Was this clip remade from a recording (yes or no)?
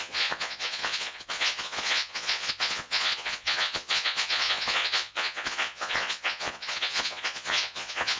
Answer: yes